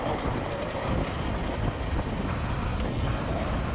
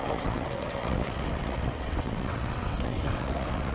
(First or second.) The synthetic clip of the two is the second